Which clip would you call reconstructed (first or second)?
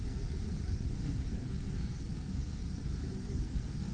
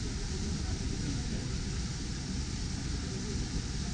first